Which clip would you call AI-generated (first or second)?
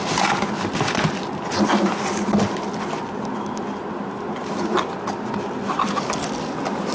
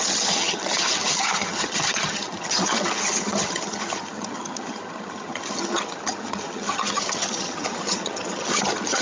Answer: second